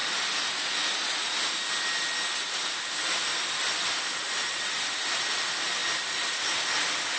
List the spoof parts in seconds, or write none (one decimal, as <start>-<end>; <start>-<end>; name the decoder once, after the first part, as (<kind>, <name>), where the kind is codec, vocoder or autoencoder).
2.9-5.8 (vocoder, BigVGAN v2)